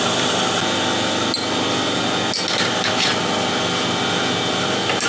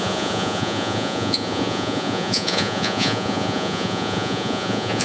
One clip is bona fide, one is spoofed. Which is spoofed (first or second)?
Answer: second